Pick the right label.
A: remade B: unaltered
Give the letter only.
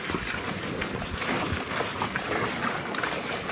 B